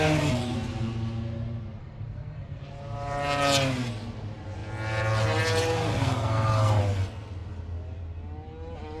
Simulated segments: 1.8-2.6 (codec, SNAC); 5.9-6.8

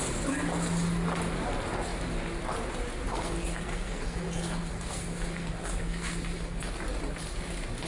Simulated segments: 3.1-6.7 (codec, SNAC)

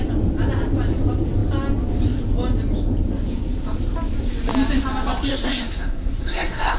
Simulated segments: 5.3-6.8 (codec, SNAC)

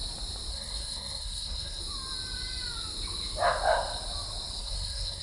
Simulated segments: 0.5-1.8 (codec, SNAC); 4.6-5.2

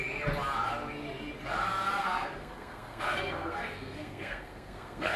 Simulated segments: 2.0-5.2 (codec, SNAC)

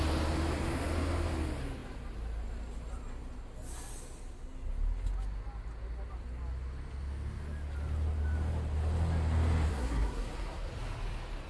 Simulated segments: 9.7-10.7 (codec, SNAC)